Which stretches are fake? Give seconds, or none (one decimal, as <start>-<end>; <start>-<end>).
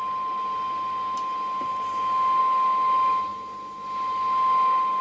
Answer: none